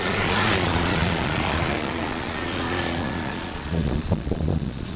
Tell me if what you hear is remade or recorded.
remade